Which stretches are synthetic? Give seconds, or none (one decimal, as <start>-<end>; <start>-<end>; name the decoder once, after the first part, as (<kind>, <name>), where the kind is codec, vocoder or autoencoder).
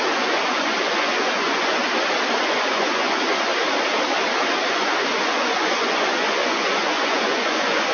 0.0-1.8 (vocoder, Vocos); 2.4-3.5; 4.7-7.9